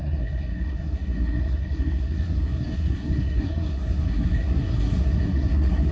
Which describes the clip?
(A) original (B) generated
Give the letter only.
B